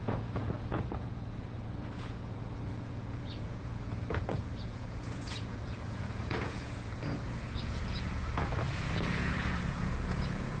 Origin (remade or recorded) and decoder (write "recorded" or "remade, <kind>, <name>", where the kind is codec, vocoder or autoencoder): remade, vocoder, Vocos